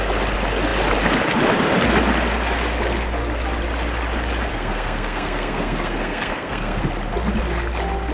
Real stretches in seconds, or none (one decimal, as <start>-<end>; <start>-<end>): 0.0-4.5; 6.8-8.1